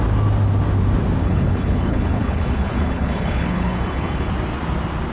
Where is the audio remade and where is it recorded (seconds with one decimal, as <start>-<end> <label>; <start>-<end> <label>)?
0.0-1.2 recorded; 1.2-4.3 remade; 4.3-5.1 recorded